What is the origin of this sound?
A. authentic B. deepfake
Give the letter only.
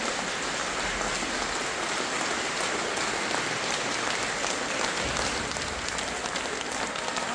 A